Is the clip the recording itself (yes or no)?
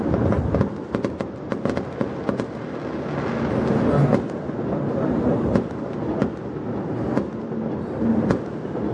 yes